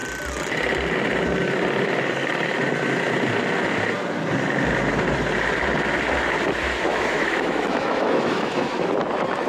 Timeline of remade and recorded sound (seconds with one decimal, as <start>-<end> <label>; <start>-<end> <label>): 0.0-6.9 recorded; 6.9-8.9 remade; 8.9-9.5 recorded